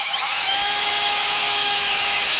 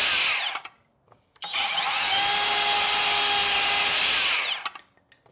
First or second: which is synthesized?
first